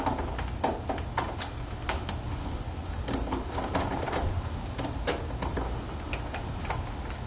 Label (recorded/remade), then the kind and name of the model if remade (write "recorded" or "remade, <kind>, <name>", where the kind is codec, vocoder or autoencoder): recorded